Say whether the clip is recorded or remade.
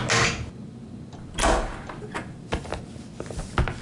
recorded